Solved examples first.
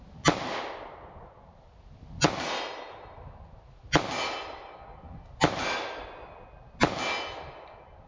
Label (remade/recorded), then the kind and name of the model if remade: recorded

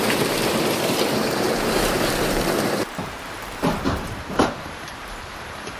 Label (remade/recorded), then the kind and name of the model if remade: remade, vocoder, BigVGAN v2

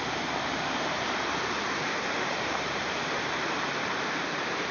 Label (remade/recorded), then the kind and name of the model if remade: remade, vocoder, BigVGAN v2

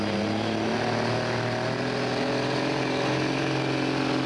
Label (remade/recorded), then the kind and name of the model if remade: recorded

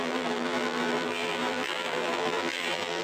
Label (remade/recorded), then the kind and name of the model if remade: remade, vocoder, BigVGAN v2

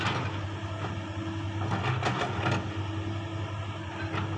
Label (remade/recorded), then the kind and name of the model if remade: recorded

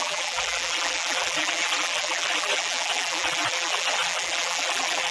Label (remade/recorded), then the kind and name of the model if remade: remade, vocoder, BigVGAN v2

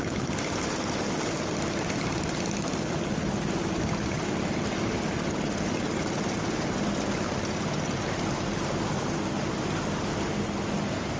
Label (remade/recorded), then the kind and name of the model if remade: recorded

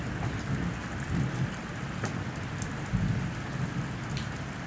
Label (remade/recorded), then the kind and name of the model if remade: recorded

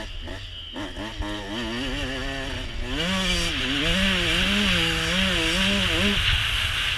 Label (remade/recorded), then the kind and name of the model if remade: recorded